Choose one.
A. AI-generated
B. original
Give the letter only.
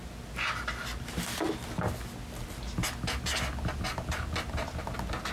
B